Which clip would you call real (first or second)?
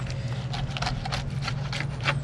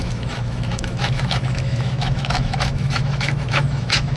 first